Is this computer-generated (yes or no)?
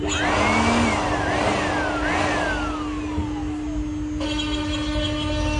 no